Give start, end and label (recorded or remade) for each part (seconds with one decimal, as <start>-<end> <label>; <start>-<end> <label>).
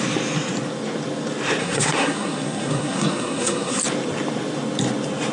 0.0-1.6 recorded; 1.6-3.8 remade; 3.8-5.3 recorded